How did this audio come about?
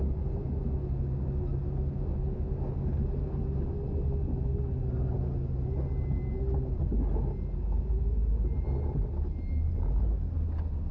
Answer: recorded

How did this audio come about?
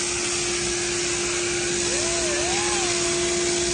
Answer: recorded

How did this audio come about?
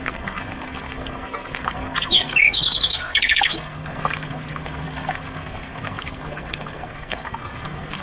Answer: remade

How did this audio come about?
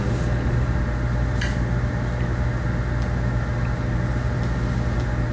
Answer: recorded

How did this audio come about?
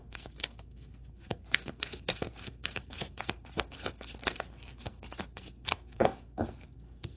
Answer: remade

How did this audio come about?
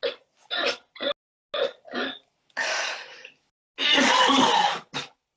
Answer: recorded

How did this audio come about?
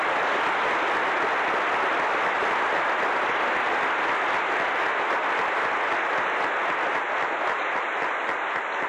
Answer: recorded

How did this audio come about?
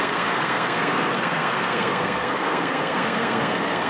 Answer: remade